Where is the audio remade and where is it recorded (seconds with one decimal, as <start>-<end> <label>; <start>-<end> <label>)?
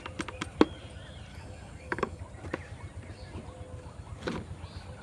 0.0-1.3 recorded; 1.3-2.2 remade; 2.2-5.0 recorded